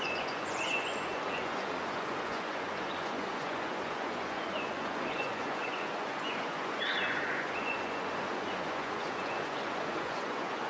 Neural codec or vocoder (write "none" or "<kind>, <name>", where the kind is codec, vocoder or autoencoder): vocoder, Vocos